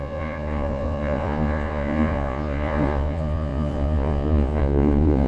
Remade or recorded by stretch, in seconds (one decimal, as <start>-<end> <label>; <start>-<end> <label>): 0.0-5.3 remade

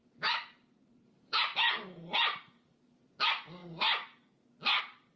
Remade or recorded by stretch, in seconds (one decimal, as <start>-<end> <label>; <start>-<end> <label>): 0.0-3.1 remade; 3.1-5.2 recorded